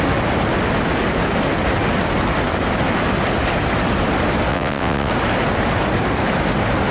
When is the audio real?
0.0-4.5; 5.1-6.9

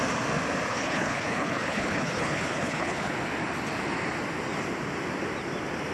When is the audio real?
0.0-0.7; 3.1-5.9

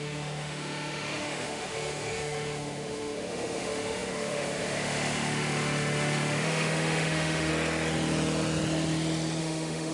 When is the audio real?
7.5-9.4

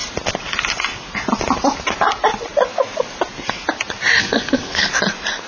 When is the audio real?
0.0-4.2; 4.9-5.5

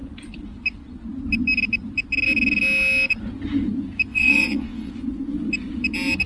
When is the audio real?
0.0-4.1; 4.9-6.3

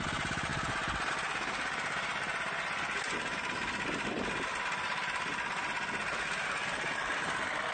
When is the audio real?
0.0-7.7

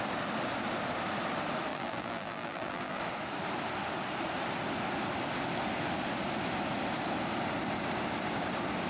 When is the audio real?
0.0-1.7; 3.0-8.9

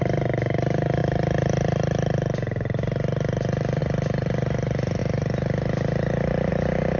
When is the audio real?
0.0-7.0